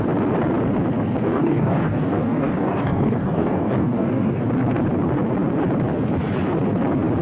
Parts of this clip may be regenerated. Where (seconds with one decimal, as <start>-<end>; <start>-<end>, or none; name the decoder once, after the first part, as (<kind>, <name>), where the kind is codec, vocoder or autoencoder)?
1.2-4.4 (codec, DAC)